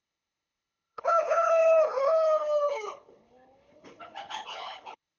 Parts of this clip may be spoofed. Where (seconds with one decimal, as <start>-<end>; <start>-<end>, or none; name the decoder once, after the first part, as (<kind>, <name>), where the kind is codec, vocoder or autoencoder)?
0.0-5.2 (codec, HILCodec)